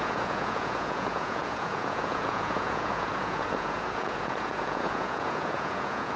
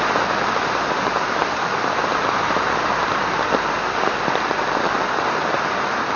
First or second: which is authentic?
second